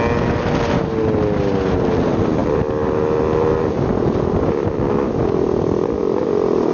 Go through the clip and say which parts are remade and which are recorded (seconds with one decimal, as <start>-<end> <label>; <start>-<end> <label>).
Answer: 0.0-6.7 recorded